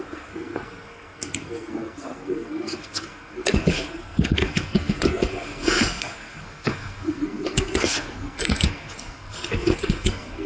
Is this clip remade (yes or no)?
yes